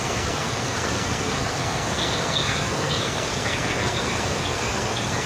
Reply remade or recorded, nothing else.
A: remade